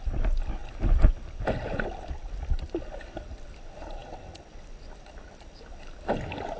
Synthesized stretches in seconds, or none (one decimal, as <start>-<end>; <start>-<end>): 0.6-2.3